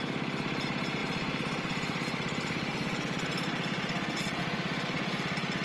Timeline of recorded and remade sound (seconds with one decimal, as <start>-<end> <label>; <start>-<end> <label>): 0.0-1.0 recorded; 1.0-4.4 remade; 4.4-5.6 recorded